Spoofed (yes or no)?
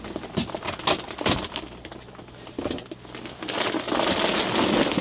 no